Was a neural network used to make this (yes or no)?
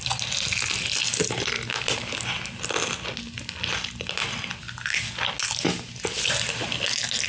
no